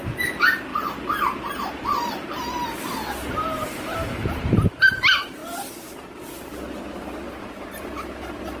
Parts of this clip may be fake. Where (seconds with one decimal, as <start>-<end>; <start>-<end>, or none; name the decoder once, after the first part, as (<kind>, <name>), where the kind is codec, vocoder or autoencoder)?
0.7-2.8 (vocoder, BigVGAN v2); 3.2-4.8